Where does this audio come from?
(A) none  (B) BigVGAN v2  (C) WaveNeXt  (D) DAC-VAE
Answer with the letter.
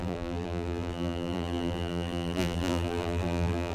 B